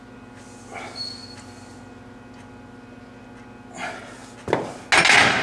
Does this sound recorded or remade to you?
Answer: recorded